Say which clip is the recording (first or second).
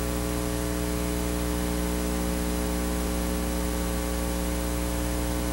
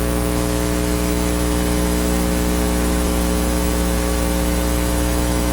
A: first